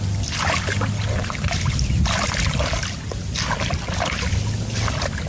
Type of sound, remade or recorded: recorded